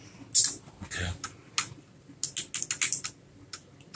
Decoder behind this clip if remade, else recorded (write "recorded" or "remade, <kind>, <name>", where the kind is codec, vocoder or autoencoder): recorded